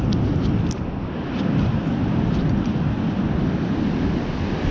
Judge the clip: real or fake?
real